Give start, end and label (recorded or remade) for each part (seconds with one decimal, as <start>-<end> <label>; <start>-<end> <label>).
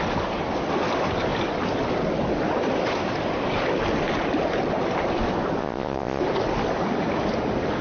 0.0-5.6 recorded; 5.6-6.2 remade; 6.2-7.8 recorded